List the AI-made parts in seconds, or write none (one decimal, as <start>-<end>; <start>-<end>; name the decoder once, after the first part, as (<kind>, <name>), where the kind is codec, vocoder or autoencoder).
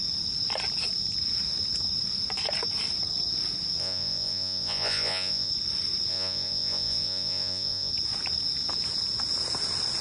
3.8-5.5 (vocoder, Vocos); 6.1-7.9